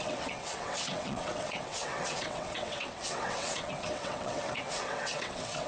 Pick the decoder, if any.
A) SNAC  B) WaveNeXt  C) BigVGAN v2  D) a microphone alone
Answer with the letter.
B